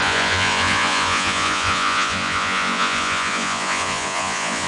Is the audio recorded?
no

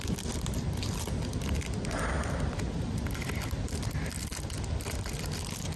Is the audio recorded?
yes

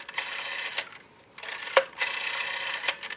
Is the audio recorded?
yes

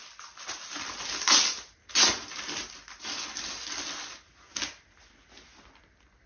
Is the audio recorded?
yes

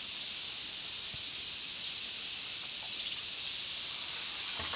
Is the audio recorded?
yes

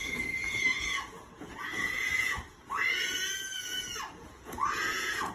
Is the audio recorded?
no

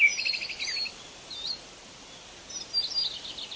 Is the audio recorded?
yes